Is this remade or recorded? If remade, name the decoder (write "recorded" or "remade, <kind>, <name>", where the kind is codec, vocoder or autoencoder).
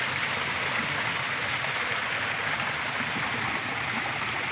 recorded